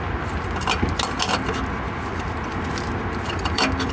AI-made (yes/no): no